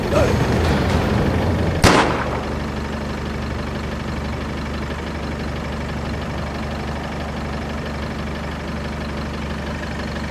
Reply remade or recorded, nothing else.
recorded